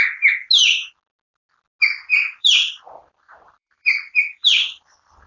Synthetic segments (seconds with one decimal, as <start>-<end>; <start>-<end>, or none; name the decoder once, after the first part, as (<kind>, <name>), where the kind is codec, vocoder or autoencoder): 2.4-5.3 (vocoder, BigVGAN v2)